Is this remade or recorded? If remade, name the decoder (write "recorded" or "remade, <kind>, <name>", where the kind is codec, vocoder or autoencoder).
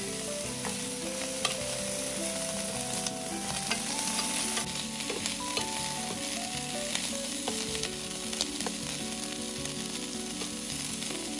recorded